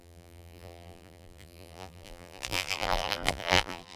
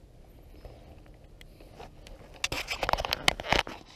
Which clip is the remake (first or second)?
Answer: first